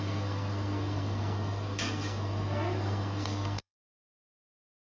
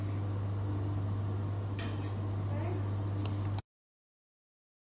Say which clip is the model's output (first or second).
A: first